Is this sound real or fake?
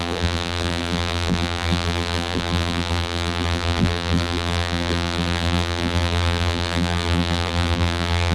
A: fake